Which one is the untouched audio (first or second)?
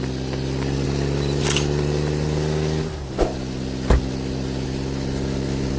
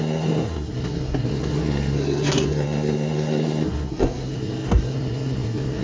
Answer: first